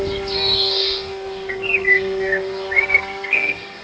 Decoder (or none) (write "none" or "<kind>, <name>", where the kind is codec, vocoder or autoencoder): codec, SNAC